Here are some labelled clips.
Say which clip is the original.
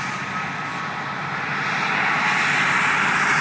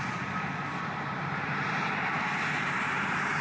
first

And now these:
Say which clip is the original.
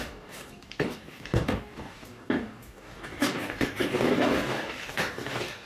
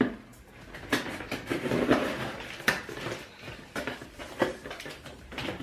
second